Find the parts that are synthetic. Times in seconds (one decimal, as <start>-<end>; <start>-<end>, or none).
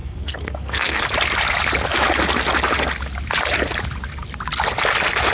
0.0-1.0